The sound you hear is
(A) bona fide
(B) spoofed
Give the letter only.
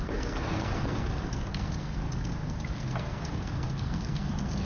B